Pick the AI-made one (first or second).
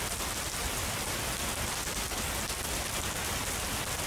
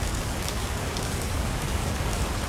second